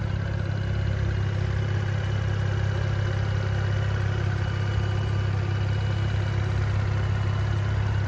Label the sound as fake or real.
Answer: real